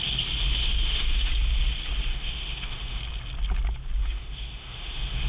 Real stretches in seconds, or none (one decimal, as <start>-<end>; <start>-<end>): 0.0-0.6; 1.3-2.1; 3.0-4.0